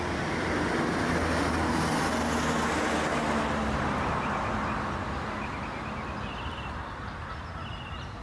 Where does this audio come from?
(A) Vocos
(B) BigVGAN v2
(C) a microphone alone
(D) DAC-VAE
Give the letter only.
C